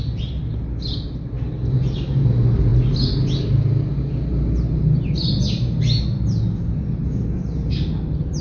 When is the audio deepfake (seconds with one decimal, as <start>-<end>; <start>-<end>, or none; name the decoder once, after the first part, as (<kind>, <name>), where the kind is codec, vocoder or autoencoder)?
none